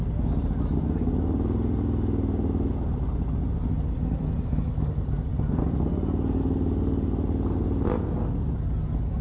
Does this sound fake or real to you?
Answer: real